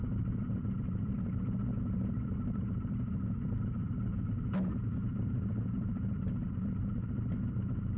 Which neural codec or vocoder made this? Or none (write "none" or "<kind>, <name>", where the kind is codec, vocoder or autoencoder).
vocoder, BigVGAN v2